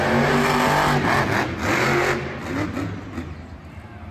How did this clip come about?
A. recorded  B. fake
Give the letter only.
A